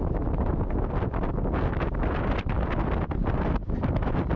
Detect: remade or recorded recorded